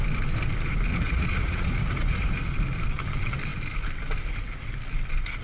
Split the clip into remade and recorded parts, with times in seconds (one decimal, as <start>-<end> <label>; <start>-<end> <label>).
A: 0.0-0.9 recorded; 0.9-2.4 remade; 2.4-5.4 recorded